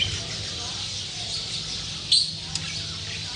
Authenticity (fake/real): real